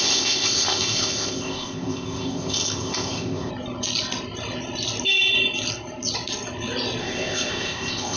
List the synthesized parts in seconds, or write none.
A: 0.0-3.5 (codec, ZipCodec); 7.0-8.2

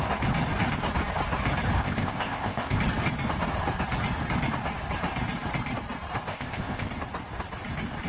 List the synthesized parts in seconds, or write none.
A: 1.8-2.8 (codec, ZipCodec); 6.3-6.9

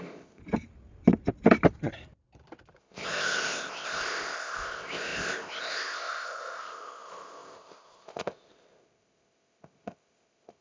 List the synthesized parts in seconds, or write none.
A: 0.0-0.4 (codec, ZipCodec); 2.8-10.6

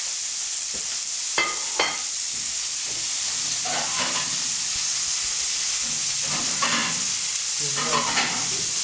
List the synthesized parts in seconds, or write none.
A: none

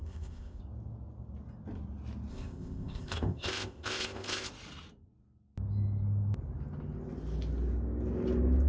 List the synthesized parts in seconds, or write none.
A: 0.0-0.6 (codec, ZipCodec); 2.3-4.5